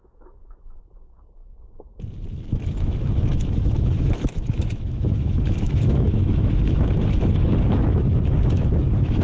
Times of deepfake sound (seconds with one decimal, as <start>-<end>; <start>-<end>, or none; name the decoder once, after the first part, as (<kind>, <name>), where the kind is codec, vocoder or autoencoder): 0.0-1.4 (autoencoder, DAC-VAE); 2.5-9.2